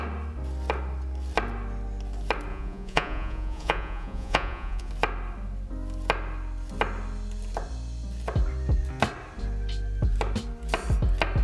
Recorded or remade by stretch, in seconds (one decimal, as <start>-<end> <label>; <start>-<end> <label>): 0.0-2.5 recorded; 2.5-4.9 remade; 4.9-11.4 recorded